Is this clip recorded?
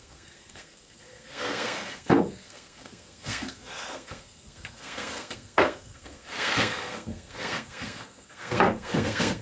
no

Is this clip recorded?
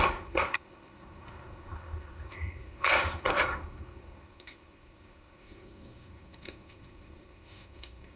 no